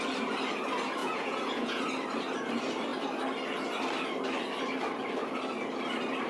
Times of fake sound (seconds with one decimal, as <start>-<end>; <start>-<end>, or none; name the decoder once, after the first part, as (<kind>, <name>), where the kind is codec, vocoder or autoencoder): 1.0-1.8 (vocoder, Vocos)